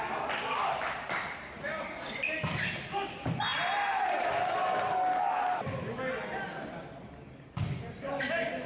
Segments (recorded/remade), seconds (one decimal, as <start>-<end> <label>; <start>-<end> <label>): 0.0-8.7 recorded